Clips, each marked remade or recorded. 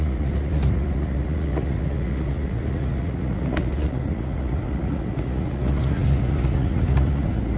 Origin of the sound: remade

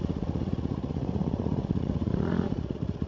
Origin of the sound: remade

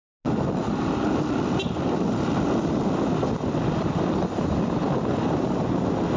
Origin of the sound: recorded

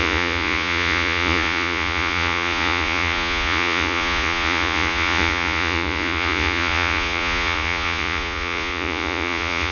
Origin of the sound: remade